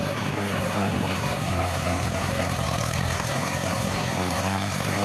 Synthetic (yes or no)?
yes